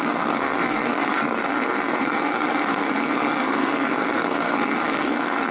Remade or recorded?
remade